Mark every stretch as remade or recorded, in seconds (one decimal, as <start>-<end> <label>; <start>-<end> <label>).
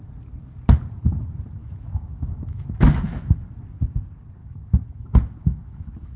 0.0-1.6 recorded; 1.6-3.3 remade; 3.3-4.4 recorded; 4.4-6.2 remade